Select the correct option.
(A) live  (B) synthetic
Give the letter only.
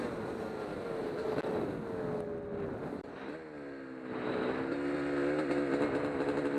A